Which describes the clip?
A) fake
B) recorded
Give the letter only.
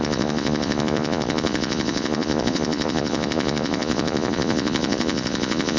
A